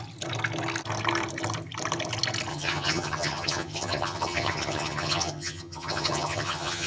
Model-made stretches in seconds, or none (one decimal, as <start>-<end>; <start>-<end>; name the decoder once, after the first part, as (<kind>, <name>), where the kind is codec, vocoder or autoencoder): 2.5-6.9 (vocoder, HiFi-GAN)